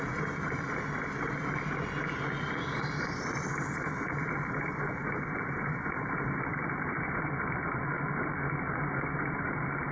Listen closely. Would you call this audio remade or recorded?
recorded